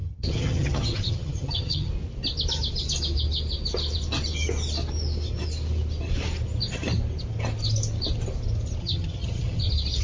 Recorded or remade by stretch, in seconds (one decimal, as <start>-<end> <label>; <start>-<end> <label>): 0.0-1.9 remade; 1.9-8.8 recorded; 8.8-9.6 remade; 9.6-10.0 recorded